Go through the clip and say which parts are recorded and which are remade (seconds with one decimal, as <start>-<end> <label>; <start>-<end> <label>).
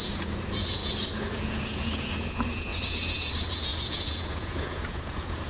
0.0-5.5 remade